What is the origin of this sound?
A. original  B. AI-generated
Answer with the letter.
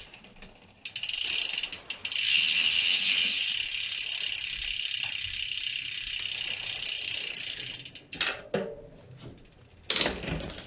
A